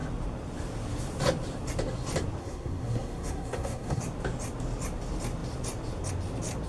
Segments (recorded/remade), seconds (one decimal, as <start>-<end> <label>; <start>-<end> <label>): 0.0-2.4 recorded; 2.4-4.0 remade; 4.0-6.7 recorded